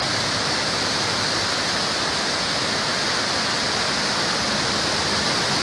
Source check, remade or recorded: recorded